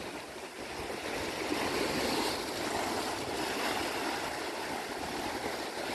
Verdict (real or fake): real